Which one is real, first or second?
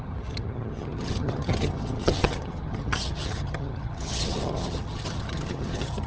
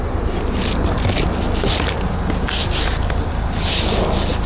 second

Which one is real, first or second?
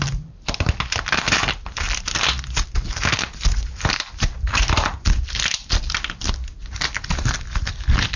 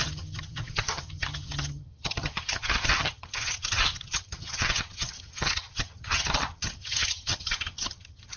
first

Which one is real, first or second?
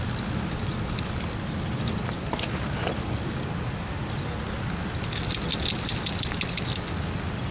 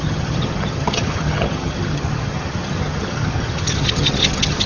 first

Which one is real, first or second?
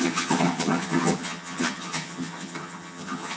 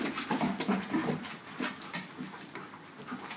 second